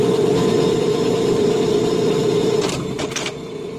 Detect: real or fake fake